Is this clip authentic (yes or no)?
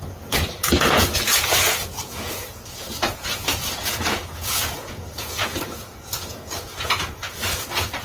no